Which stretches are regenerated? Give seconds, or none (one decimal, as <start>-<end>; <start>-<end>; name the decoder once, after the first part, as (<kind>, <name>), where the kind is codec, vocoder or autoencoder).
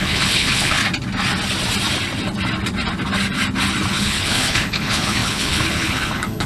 0.0-0.8 (codec, HILCodec); 3.9-6.5